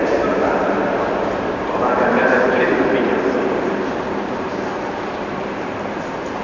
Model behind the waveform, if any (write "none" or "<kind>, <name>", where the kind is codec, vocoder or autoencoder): vocoder, BigVGAN v2